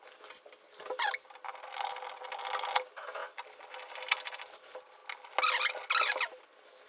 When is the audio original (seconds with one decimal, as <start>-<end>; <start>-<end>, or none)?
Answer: 0.0-6.9